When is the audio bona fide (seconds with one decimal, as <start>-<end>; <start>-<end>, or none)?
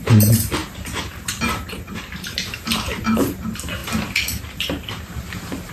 none